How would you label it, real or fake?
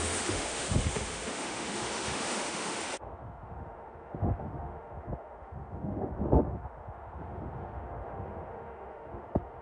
fake